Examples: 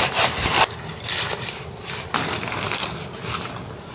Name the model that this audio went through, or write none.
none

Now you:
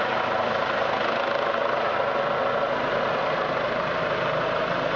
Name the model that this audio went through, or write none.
none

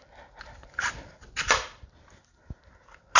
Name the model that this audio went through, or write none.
none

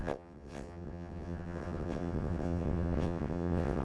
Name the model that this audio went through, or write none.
vocoder, WaveNeXt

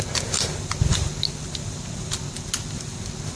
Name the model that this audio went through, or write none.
none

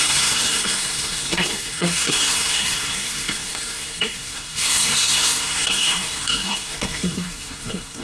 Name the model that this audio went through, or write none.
codec, SNAC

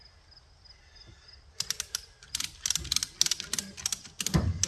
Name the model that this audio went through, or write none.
none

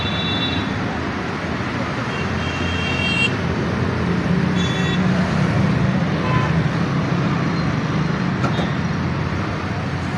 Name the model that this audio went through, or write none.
none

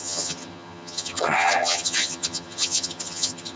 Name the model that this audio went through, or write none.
vocoder, HiFi-GAN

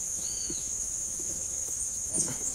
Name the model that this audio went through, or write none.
autoencoder, DAC-VAE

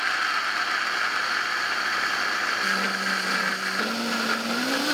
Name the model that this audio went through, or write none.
none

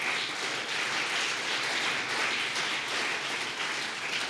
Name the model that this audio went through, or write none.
none